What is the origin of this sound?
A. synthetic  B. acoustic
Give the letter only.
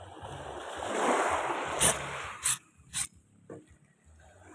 B